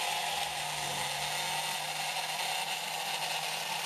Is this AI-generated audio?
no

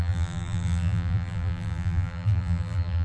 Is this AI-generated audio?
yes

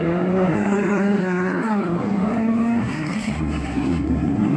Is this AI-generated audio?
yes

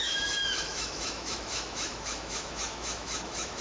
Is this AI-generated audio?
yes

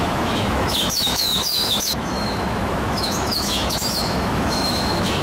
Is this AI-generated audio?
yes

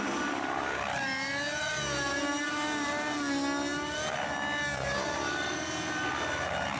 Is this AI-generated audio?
no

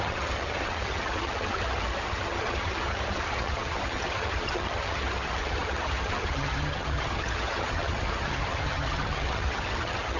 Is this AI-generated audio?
yes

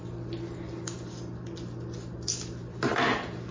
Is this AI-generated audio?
no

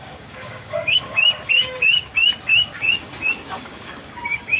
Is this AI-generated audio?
yes